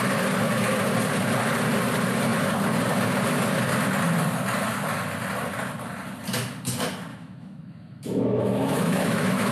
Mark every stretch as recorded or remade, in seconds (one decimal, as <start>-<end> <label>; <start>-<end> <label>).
0.0-7.1 recorded; 7.1-9.5 remade